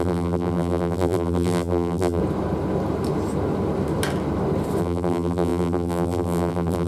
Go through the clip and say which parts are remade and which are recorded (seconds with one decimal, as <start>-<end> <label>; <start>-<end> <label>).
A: 0.0-2.2 remade; 2.2-4.8 recorded; 4.8-6.9 remade